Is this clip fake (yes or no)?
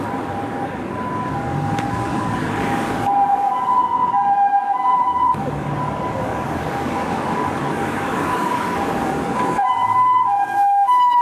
yes